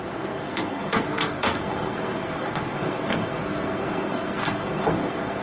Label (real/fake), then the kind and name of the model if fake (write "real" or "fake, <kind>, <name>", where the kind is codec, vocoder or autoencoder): fake, codec, SNAC